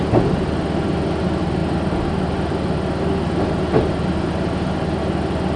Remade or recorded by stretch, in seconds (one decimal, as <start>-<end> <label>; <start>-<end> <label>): 0.0-5.6 recorded